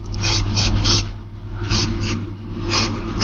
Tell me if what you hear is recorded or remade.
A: remade